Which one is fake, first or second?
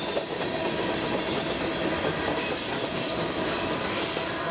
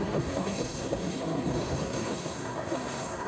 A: second